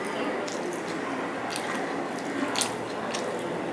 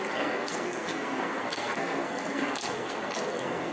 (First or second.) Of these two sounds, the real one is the first